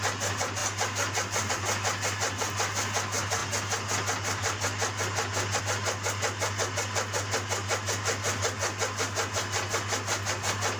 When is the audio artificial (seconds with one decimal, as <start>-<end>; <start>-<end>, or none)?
none